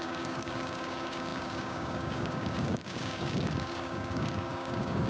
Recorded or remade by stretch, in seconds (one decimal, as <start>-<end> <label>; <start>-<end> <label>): 0.0-5.1 remade